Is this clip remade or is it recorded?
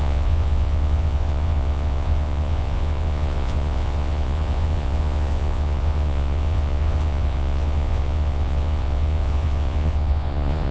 remade